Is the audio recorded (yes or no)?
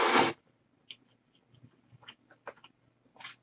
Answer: yes